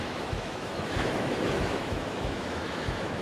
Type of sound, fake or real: fake